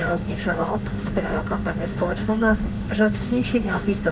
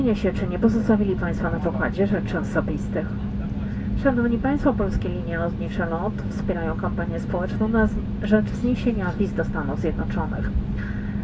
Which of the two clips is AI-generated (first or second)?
first